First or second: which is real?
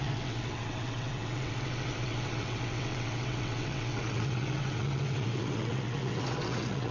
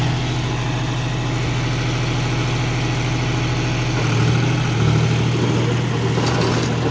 second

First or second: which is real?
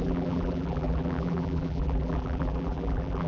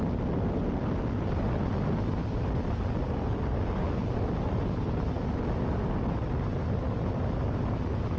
second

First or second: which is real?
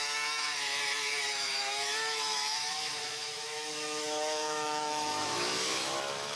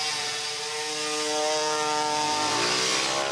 second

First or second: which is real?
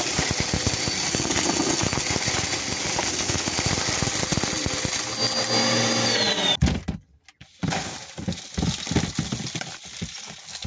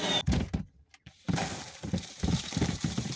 first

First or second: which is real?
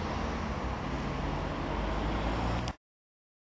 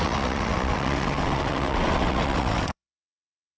first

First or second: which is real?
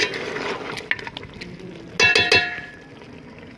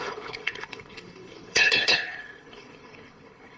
first